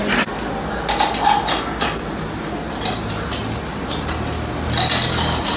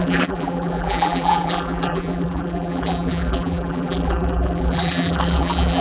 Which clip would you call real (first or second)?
first